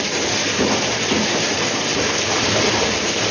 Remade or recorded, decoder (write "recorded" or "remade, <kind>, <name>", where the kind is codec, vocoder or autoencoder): remade, vocoder, BigVGAN v2